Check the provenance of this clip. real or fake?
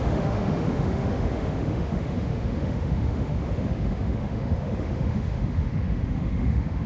fake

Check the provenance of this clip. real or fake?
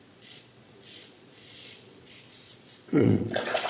fake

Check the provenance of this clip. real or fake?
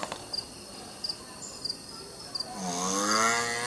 real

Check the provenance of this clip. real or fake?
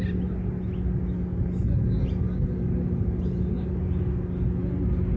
real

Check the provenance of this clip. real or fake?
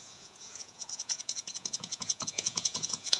fake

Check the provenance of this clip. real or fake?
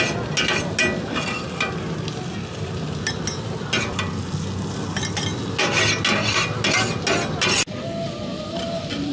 real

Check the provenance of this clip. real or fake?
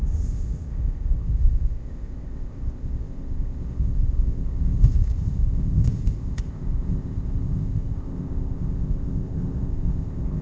fake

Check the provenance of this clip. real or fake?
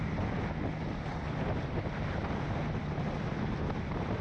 real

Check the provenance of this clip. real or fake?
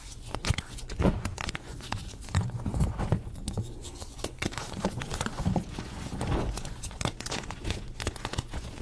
fake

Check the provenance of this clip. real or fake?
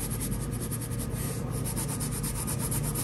real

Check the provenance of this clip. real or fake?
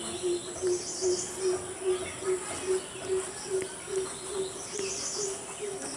real